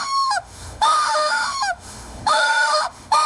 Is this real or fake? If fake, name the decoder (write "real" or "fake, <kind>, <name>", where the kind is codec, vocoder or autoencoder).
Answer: fake, autoencoder, DAC-VAE